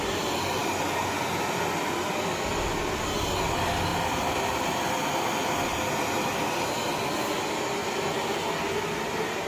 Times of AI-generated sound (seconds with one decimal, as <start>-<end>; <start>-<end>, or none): 3.9-4.8